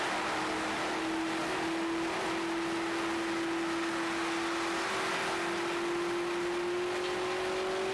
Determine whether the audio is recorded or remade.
recorded